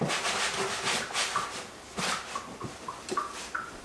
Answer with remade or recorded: recorded